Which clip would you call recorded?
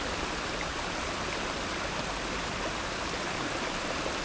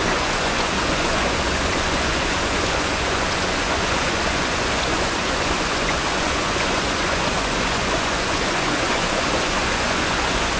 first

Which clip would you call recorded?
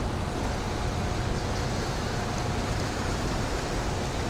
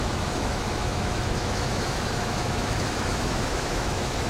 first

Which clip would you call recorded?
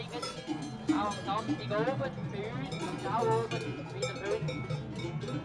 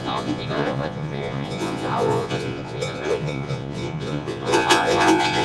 first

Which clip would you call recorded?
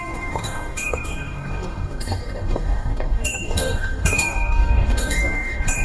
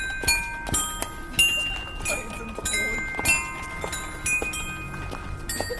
second